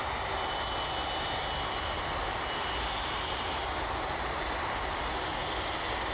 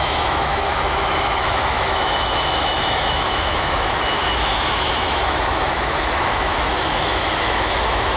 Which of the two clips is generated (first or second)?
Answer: second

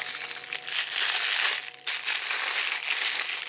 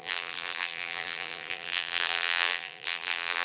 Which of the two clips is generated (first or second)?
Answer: second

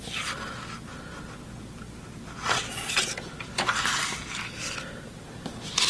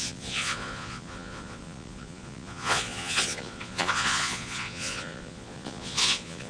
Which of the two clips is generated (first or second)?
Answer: second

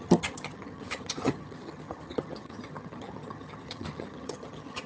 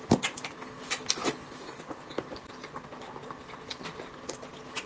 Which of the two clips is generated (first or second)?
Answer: first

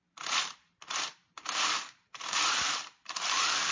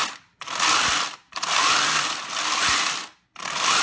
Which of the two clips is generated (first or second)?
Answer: first